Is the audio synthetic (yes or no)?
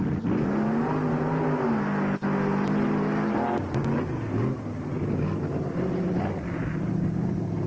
no